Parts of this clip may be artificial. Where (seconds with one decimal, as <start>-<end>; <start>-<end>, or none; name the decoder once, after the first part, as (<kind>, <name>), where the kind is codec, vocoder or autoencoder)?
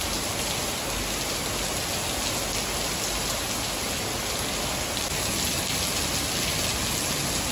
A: none